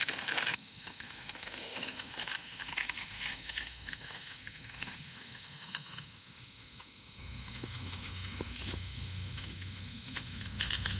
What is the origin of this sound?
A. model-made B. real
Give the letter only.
A